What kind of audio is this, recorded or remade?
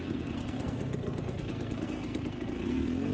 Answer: remade